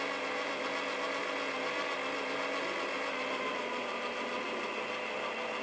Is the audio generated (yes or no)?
no